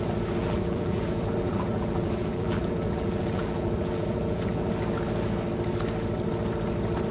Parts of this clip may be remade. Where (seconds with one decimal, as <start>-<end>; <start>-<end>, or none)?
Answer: 0.4-4.7